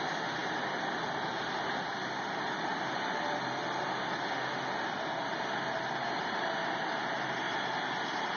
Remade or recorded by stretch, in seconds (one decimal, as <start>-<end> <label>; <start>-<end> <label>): 0.0-8.4 recorded